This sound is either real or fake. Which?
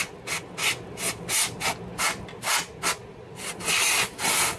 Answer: real